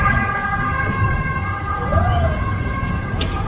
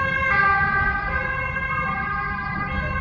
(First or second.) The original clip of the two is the second